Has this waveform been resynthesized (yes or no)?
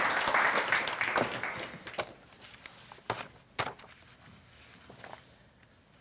no